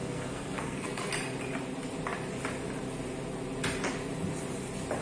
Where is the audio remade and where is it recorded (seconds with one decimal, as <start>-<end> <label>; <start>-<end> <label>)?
0.0-1.1 remade; 1.1-5.0 recorded